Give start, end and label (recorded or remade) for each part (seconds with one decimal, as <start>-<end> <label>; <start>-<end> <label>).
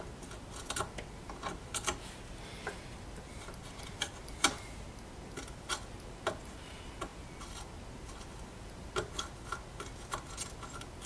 0.0-11.1 recorded